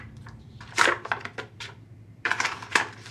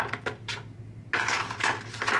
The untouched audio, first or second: second